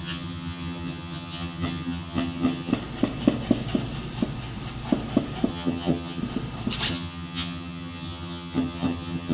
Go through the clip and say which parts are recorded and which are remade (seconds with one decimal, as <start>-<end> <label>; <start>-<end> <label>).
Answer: 0.0-2.7 remade; 2.7-5.5 recorded; 5.5-6.2 remade; 6.2-6.9 recorded; 6.9-9.3 remade